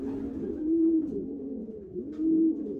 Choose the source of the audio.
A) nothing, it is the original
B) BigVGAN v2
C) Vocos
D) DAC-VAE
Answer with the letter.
A